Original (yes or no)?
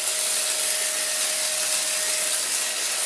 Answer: yes